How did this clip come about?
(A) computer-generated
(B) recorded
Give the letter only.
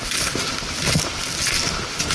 B